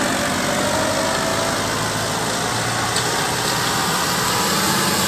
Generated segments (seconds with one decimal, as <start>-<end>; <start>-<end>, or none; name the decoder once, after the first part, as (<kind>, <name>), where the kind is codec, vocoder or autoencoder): none